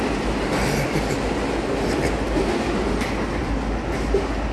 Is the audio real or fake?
real